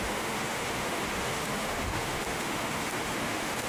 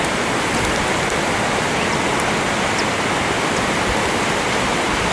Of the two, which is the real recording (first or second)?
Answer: second